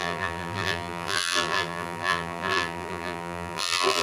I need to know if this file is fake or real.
fake